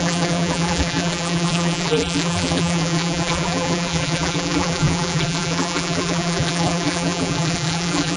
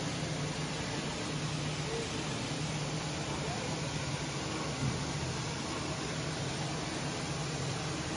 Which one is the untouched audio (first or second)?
second